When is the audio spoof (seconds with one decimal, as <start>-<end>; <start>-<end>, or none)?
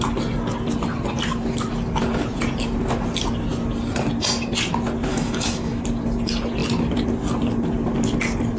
5.1-5.8